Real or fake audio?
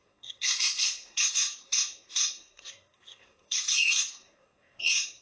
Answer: fake